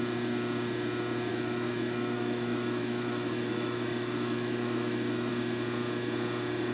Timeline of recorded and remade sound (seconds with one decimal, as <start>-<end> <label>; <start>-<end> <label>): 0.0-1.3 recorded; 1.3-5.3 remade; 5.3-6.7 recorded